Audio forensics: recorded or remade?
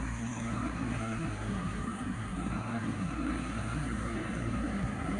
remade